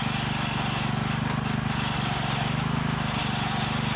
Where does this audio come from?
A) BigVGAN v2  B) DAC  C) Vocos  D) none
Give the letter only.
D